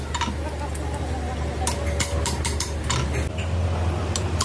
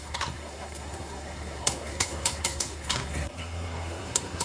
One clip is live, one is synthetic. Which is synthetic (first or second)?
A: second